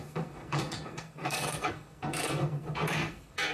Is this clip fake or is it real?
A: fake